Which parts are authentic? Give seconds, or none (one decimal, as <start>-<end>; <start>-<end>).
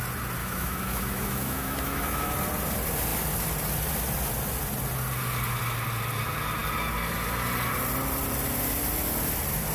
0.0-0.4; 2.3-9.7